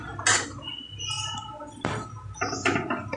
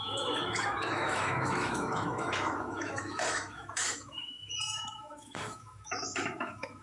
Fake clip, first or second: second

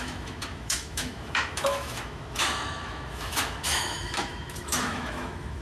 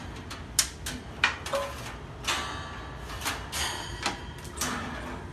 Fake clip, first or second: first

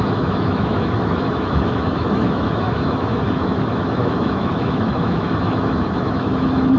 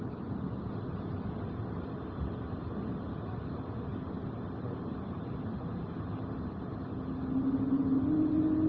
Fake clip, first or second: first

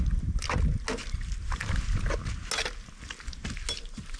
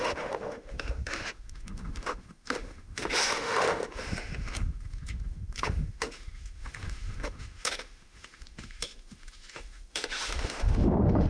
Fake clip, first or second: second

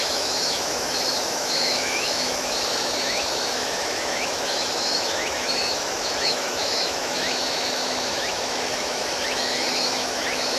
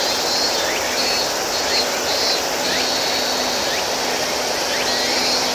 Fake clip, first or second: first